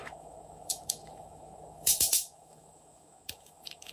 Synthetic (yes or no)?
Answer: yes